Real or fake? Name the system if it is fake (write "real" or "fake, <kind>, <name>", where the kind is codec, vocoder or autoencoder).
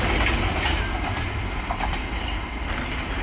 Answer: real